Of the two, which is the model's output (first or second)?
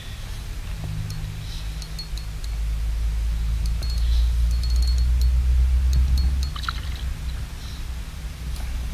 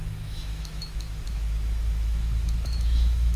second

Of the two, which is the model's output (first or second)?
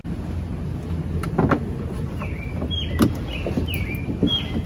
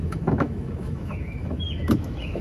second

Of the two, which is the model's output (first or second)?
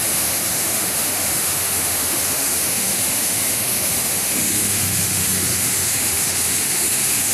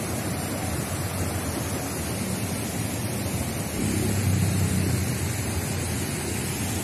first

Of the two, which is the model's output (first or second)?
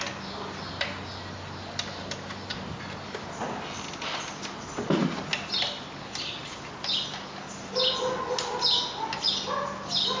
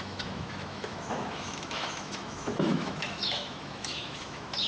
second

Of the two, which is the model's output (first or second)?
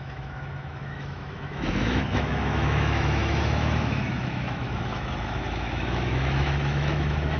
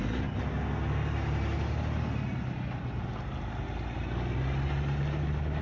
first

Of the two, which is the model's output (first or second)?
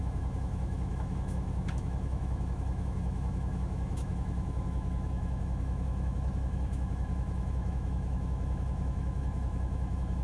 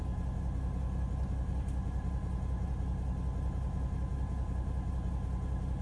first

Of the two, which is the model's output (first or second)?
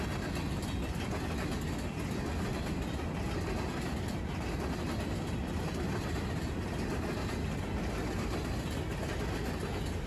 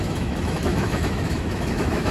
second